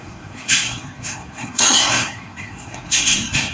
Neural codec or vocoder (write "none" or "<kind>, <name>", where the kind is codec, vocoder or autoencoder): codec, SNAC